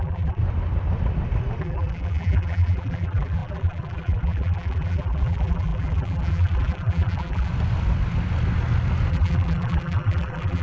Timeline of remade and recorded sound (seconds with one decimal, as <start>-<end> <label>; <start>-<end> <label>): 0.0-0.4 remade; 0.4-1.6 recorded; 1.6-7.5 remade; 7.5-9.1 recorded; 9.1-10.6 remade

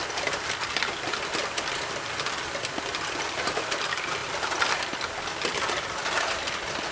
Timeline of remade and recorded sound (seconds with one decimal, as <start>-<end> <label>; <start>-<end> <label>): 0.0-6.9 recorded

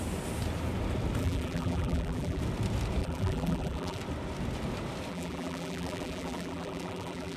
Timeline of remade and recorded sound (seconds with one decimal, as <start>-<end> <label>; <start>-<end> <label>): 0.0-1.2 recorded; 1.2-2.4 remade; 2.4-3.0 recorded; 3.0-4.0 remade; 4.0-5.1 recorded; 5.1-7.4 remade

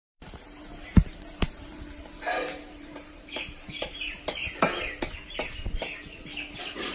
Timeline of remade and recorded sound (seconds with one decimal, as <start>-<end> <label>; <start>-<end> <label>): 0.0-4.1 remade; 4.1-6.9 recorded

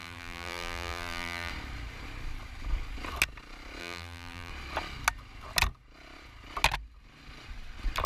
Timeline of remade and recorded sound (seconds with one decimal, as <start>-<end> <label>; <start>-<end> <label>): 0.0-1.5 remade; 1.5-3.8 recorded; 3.8-4.5 remade; 4.5-8.1 recorded

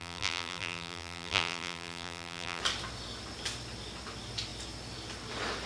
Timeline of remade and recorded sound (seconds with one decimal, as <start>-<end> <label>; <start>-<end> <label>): 0.0-2.6 remade; 2.6-5.7 recorded